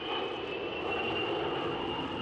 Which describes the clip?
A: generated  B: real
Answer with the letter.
B